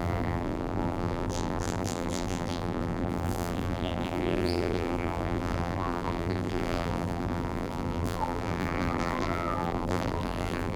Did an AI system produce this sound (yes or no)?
yes